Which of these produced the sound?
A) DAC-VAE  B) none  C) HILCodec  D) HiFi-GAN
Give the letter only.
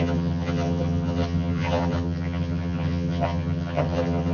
D